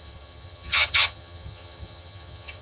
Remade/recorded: remade